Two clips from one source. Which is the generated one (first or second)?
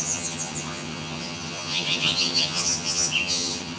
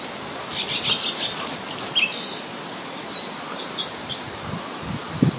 first